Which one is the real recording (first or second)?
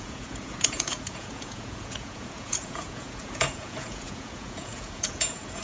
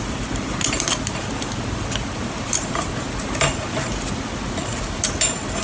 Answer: second